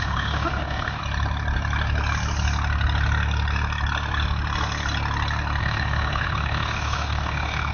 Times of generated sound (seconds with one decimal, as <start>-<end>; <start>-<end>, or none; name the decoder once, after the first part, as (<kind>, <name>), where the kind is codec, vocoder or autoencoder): 0.0-1.0 (autoencoder, DAC-VAE); 5.6-7.7